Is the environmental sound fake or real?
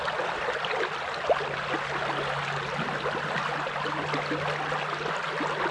real